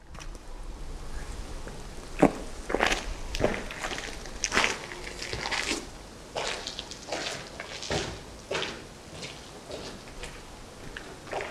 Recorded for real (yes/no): yes